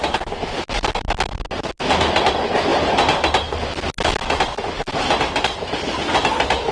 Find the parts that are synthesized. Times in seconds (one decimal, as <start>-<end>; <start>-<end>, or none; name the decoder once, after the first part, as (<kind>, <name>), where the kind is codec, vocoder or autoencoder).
none